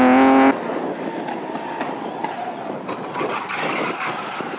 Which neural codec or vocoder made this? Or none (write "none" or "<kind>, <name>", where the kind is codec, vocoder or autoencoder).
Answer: none